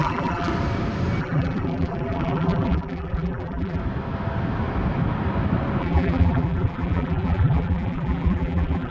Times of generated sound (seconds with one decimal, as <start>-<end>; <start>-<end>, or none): 0.0-0.5; 1.2-3.8; 5.8-8.9